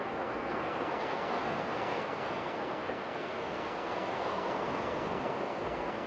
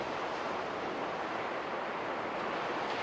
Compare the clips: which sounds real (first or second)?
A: second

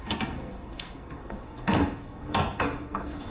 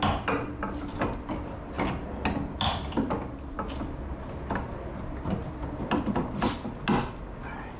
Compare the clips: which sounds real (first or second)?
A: second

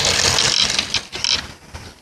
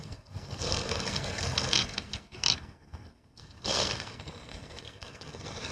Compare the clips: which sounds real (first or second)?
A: first